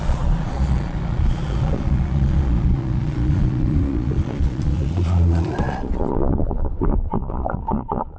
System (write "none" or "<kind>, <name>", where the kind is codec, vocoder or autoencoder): vocoder, Vocos